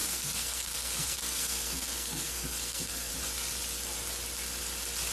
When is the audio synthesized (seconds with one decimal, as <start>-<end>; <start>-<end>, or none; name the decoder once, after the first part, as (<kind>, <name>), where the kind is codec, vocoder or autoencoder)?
0.0-3.1 (codec, SNAC)